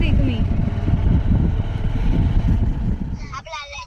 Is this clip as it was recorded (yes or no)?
yes